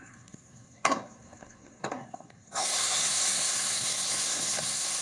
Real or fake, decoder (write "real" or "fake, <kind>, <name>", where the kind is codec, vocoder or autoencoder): fake, codec, SNAC